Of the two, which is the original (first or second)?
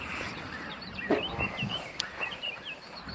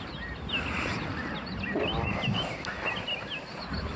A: second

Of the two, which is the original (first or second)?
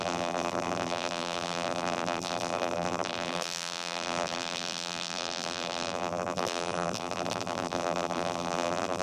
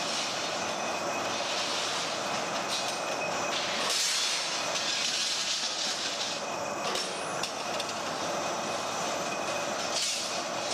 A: second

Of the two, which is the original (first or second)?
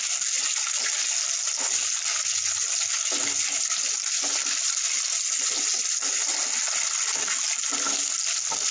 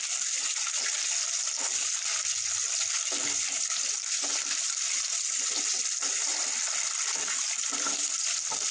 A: first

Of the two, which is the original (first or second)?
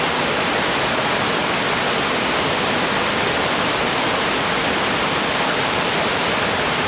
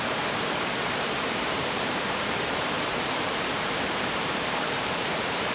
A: first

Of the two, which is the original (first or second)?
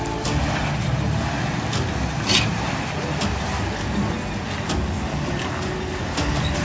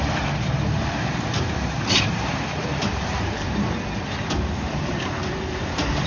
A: first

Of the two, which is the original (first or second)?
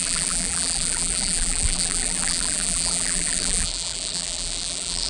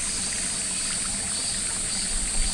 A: second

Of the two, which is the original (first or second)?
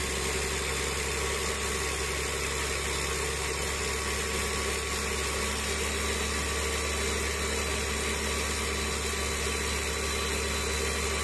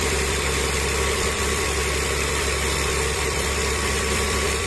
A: first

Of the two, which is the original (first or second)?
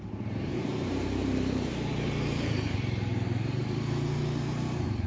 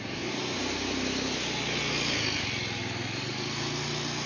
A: second